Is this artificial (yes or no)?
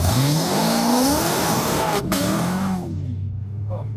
yes